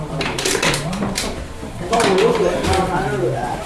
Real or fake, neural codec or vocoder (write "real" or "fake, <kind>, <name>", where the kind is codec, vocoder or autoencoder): fake, vocoder, BigVGAN v2